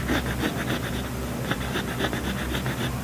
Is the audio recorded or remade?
recorded